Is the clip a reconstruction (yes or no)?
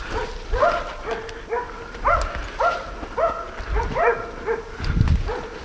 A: no